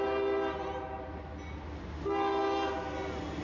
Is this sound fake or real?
real